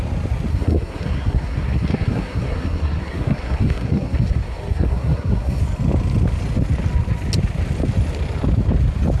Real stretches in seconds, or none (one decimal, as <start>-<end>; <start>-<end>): 0.0-0.5; 5.6-9.2